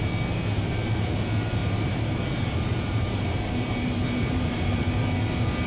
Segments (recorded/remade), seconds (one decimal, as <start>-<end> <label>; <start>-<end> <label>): 0.0-1.6 recorded; 1.6-4.8 remade; 4.8-5.7 recorded